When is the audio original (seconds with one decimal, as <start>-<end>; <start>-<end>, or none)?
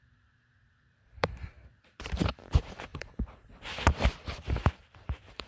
none